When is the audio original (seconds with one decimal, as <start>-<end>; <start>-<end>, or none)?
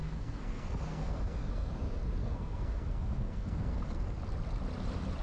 1.7-2.2; 4.2-5.2